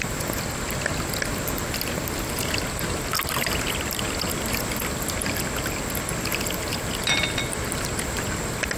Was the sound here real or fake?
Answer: real